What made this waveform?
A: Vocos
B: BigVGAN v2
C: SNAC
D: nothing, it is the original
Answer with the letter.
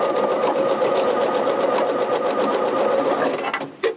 D